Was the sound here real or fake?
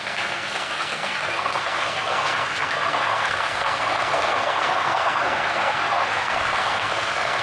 fake